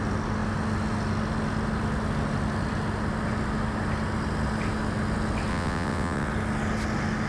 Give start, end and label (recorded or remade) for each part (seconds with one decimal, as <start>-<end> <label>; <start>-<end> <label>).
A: 0.0-5.5 recorded; 5.5-6.3 remade; 6.3-7.3 recorded